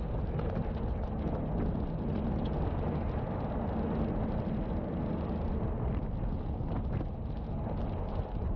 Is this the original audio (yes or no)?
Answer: yes